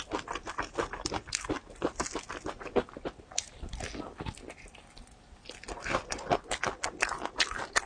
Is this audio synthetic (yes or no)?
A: no